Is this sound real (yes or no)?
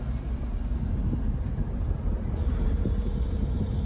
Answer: yes